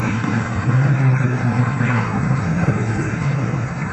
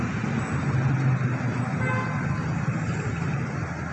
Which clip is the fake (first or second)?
first